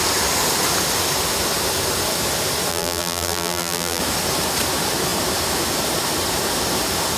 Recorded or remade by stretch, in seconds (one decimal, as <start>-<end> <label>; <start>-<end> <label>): 0.0-2.7 recorded; 2.7-4.0 remade; 4.0-7.2 recorded